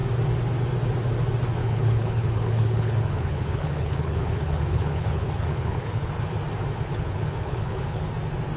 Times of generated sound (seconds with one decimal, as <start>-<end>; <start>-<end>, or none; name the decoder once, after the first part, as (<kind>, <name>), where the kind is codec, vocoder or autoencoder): 1.6-6.1 (codec, HILCodec); 6.9-8.1